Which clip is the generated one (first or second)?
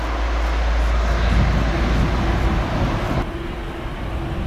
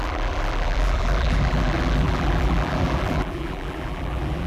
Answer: second